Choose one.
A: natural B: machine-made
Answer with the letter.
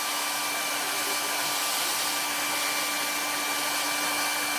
A